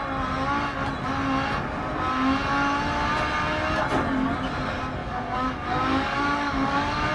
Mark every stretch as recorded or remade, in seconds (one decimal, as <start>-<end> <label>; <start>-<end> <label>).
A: 0.0-5.0 recorded; 5.0-7.1 remade